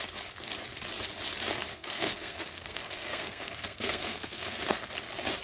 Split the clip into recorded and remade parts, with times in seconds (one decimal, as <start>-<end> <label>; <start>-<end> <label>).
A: 0.0-1.7 recorded; 1.7-4.9 remade; 4.9-5.4 recorded